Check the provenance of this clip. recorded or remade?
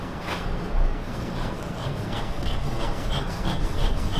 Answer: remade